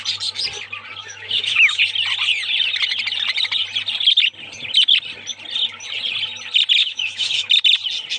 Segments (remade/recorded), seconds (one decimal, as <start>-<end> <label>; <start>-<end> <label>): 0.0-1.0 recorded; 1.0-1.8 remade; 1.8-6.8 recorded; 6.8-7.5 remade; 7.5-8.2 recorded